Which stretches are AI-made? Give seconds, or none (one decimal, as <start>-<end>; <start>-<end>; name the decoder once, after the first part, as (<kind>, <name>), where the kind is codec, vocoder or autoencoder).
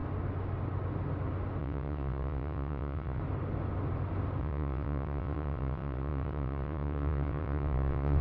1.6-3.2 (vocoder, WaveNeXt); 4.4-8.2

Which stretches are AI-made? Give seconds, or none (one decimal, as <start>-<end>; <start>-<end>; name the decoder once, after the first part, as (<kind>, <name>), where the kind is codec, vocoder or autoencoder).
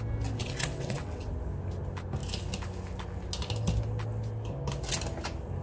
0.4-1.3 (vocoder, WaveNeXt)